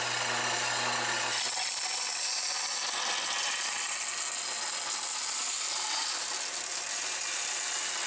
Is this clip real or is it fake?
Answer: real